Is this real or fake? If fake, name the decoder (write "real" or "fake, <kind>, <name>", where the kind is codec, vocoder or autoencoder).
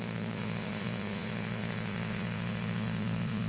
fake, vocoder, Vocos